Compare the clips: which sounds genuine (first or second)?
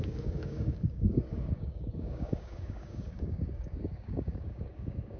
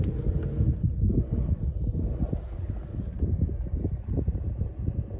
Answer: second